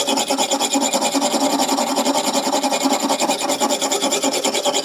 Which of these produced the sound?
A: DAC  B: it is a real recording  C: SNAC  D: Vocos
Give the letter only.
B